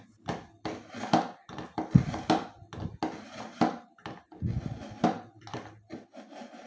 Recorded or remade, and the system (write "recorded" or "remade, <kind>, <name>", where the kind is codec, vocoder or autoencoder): recorded